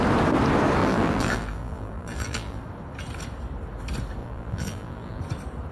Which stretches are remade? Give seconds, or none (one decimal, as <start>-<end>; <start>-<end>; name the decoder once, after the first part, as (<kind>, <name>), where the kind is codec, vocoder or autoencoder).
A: 0.8-2.6 (vocoder, BigVGAN v2); 4.2-5.2